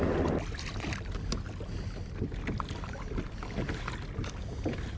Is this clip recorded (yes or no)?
yes